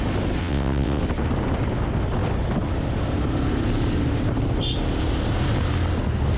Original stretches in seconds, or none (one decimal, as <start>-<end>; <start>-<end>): 0.0-0.4; 1.0-6.4